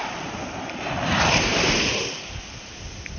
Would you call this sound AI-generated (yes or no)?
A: no